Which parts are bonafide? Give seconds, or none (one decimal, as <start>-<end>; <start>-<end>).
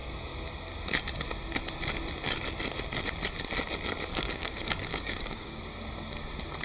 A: 0.0-4.1; 5.6-6.6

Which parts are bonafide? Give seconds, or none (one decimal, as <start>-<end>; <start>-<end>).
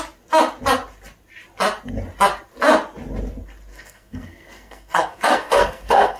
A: 0.0-3.7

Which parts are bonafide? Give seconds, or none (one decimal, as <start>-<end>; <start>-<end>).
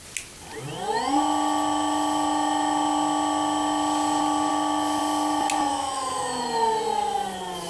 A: 0.0-5.7; 6.4-7.7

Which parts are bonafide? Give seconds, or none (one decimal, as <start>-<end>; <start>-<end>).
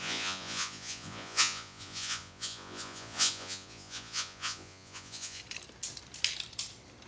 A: 5.4-7.1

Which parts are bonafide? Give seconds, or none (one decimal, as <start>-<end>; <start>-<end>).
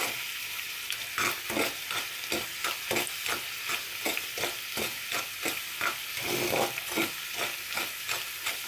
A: 0.0-8.7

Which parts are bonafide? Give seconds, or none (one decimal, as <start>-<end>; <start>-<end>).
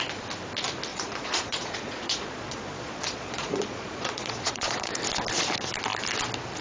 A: 0.0-0.9; 4.9-6.6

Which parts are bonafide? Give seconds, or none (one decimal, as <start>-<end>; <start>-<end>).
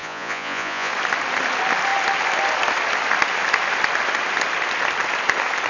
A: 0.9-5.7